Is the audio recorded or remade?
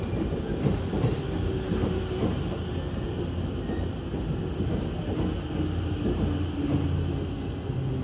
recorded